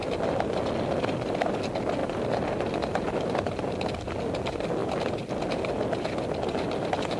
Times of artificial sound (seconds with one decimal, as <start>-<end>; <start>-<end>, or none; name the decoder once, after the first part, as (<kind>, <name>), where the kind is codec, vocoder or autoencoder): none